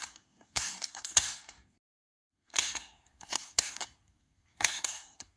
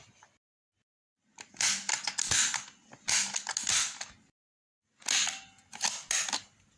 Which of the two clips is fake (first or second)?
first